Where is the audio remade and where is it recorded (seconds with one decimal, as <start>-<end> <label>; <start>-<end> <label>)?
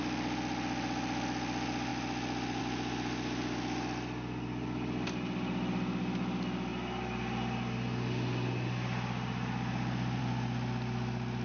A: 0.0-11.4 recorded